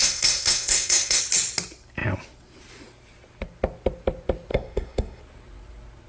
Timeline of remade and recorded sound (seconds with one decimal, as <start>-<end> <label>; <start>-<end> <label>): 0.0-1.2 remade; 1.2-4.5 recorded; 4.5-5.2 remade; 5.2-6.1 recorded